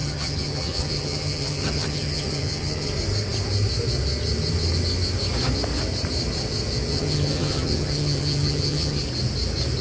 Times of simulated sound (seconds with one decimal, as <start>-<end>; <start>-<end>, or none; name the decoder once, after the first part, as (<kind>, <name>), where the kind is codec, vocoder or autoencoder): 0.0-2.9 (vocoder, HiFi-GAN); 6.9-9.0